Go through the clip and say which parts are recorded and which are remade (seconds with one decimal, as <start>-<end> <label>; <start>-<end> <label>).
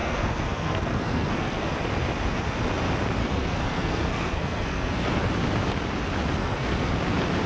0.0-1.7 remade; 1.7-3.2 recorded; 3.2-5.3 remade; 5.3-6.4 recorded; 6.4-6.9 remade; 6.9-7.5 recorded